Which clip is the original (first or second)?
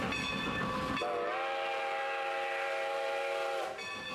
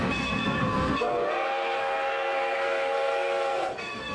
first